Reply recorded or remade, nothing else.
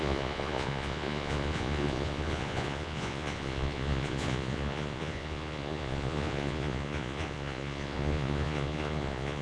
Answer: remade